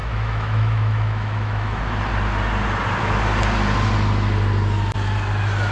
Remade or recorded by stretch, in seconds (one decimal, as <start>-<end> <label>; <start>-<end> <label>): 0.0-1.8 remade; 1.8-5.7 recorded